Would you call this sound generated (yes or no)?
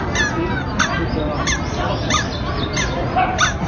no